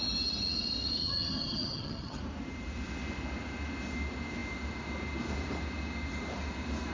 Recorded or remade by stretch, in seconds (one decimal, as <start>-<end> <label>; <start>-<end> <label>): 0.0-1.0 recorded; 1.0-2.2 remade; 2.2-6.9 recorded